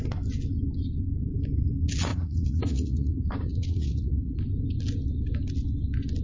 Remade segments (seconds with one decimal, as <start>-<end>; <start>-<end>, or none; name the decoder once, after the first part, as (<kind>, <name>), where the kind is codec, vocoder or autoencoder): 2.1-4.4 (vocoder, Vocos)